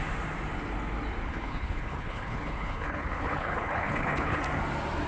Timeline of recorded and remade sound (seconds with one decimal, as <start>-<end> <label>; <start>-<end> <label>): 0.0-1.3 recorded; 1.3-4.4 remade; 4.4-5.1 recorded